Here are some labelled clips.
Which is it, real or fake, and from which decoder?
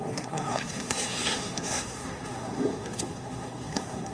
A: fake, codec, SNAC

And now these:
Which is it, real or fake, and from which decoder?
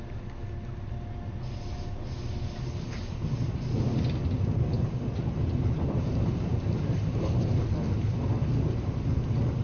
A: real